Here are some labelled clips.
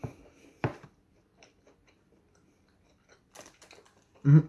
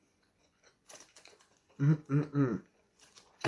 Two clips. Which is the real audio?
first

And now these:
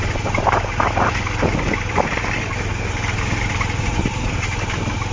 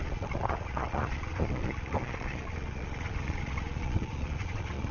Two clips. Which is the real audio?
first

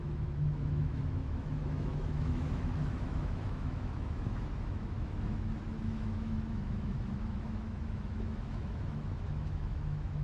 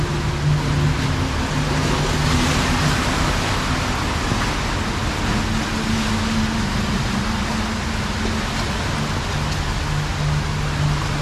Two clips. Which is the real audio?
second